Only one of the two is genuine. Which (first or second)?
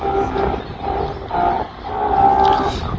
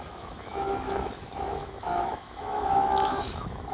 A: first